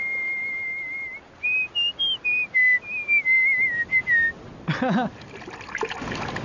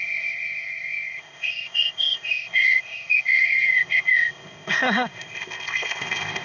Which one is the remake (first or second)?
second